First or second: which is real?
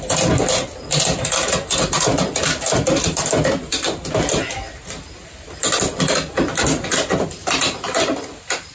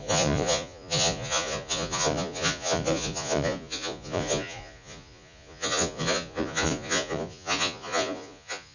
first